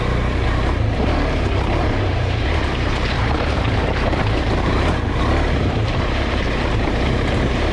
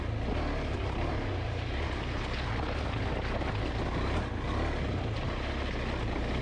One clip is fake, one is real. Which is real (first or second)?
second